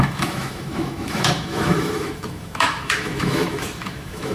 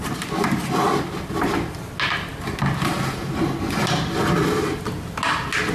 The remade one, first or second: first